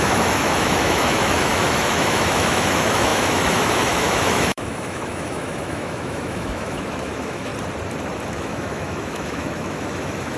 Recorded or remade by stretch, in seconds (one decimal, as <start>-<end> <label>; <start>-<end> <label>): 0.0-7.5 remade; 7.5-8.3 recorded; 8.3-10.4 remade